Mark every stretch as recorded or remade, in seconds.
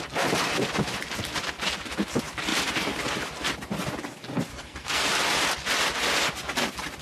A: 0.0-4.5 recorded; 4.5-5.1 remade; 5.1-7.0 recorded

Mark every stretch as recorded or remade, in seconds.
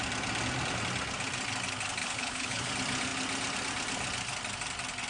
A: 0.0-2.0 recorded; 2.0-2.7 remade; 2.7-5.1 recorded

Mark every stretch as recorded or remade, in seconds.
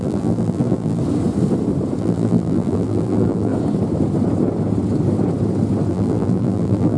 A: 0.0-1.0 remade; 1.0-2.0 recorded; 2.0-3.5 remade; 3.5-5.9 recorded; 5.9-7.0 remade